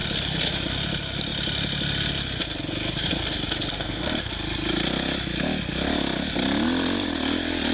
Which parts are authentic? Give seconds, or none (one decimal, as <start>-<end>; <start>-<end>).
0.0-3.7; 4.3-7.7